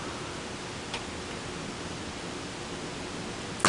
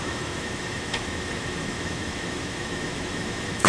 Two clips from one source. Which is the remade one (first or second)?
second